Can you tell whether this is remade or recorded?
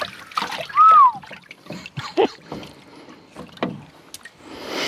recorded